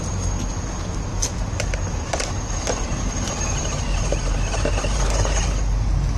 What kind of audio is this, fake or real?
real